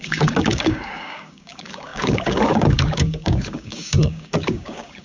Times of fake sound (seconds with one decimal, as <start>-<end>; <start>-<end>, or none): 0.0-5.0